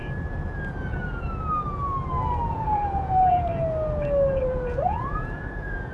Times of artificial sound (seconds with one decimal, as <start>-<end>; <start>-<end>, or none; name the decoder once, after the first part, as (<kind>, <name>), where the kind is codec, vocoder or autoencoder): 2.5-3.5 (vocoder, Vocos); 4.3-5.9